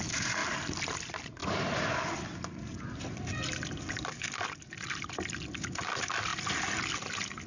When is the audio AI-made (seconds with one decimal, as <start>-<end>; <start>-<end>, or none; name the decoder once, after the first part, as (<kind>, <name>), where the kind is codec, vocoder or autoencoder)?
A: none

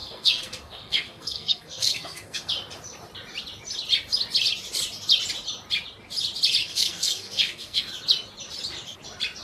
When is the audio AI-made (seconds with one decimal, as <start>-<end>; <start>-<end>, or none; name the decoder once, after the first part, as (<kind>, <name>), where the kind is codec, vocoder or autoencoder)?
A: 0.0-2.5 (codec, SNAC); 6.6-7.9